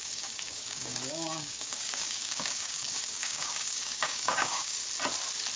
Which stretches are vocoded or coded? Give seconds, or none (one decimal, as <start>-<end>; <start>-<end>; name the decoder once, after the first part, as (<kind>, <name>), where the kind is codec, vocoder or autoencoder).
0.0-4.8 (codec, DAC)

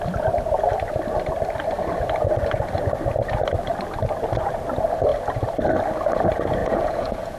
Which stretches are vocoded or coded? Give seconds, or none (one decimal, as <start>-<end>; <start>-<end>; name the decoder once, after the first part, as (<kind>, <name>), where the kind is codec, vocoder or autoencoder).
6.6-7.4 (vocoder, Vocos)

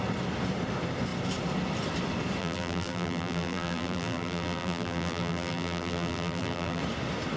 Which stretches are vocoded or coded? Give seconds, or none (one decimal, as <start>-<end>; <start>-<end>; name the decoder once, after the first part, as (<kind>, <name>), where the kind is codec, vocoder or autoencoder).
2.4-6.8 (vocoder, BigVGAN v2)

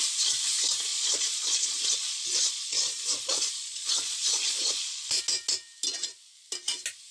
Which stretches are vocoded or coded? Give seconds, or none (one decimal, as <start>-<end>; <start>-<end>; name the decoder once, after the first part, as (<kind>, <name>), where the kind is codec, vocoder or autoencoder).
0.9-5.2 (vocoder, Vocos)

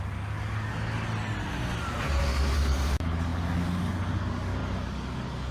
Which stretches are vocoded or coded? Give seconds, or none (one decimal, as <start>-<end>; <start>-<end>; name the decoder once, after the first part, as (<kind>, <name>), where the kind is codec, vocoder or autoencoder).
0.0-1.1 (codec, DAC); 2.2-5.5

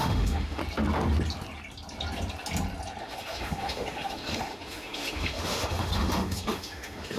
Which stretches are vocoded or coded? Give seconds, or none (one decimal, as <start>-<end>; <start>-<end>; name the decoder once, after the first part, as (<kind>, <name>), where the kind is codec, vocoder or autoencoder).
0.0-0.6 (autoencoder, DAC-VAE); 3.0-7.2

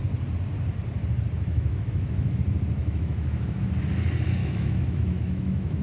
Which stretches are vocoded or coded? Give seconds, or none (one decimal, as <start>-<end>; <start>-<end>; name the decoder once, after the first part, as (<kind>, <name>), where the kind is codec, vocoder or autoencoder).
1.5-2.4 (autoencoder, DAC-VAE); 2.8-3.7; 4.4-5.8